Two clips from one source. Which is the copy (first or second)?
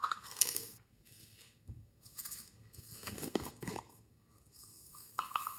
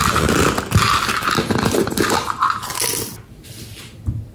first